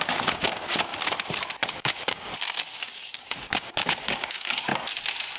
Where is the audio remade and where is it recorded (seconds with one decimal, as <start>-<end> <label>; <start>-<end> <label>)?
0.0-0.9 remade; 0.9-1.7 recorded; 1.7-2.3 remade; 2.3-2.9 recorded; 2.9-4.7 remade; 4.7-5.4 recorded